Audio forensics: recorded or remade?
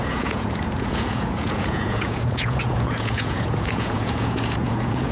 remade